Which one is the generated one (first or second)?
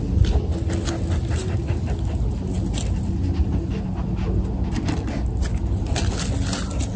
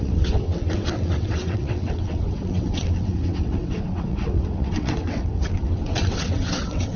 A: second